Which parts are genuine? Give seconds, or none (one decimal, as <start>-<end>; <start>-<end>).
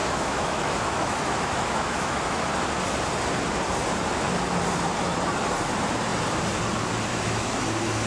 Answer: 2.4-7.1; 7.6-8.1